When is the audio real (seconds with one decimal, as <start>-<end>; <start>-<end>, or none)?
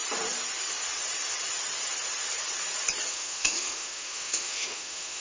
0.0-3.1